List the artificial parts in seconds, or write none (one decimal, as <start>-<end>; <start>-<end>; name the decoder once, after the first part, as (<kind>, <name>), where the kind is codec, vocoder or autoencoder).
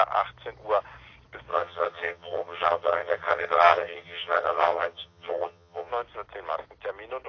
1.5-5.9 (vocoder, HiFi-GAN)